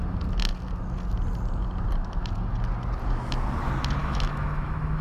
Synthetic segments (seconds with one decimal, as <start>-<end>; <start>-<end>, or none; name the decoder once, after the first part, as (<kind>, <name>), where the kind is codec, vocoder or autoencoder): 4.0-5.0 (autoencoder, DAC-VAE)